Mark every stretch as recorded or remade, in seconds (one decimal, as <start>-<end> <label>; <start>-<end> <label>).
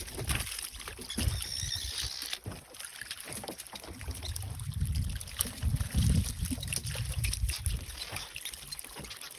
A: 0.0-9.4 recorded